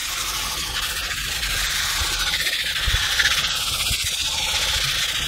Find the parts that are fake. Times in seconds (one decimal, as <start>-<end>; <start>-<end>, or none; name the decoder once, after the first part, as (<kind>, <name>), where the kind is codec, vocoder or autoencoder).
none